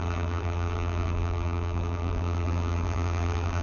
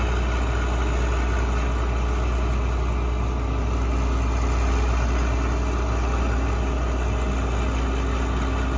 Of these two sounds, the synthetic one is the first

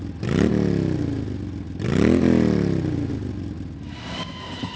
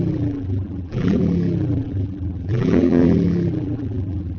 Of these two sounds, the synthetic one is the second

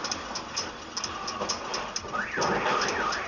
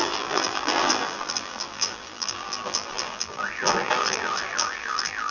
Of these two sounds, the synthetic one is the second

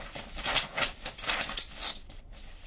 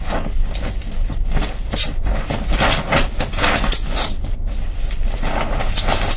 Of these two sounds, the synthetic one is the first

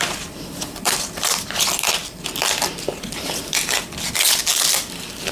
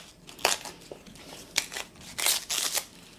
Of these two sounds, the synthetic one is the first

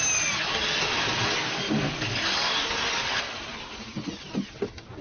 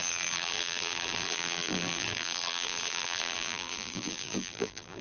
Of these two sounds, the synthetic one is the second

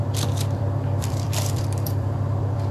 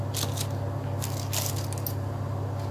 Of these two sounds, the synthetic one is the first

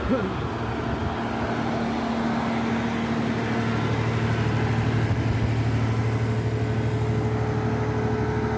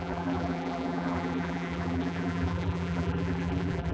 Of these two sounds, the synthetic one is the second